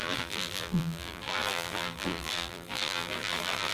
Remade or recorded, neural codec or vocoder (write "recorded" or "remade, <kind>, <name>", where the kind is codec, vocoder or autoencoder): remade, vocoder, BigVGAN v2